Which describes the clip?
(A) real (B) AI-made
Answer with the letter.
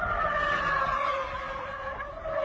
A